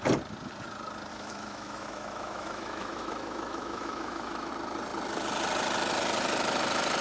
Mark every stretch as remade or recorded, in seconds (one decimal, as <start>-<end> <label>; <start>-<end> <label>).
0.0-1.1 recorded; 1.1-4.5 remade; 4.5-7.0 recorded